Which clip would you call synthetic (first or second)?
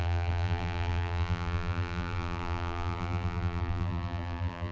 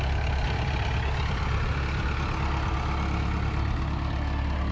first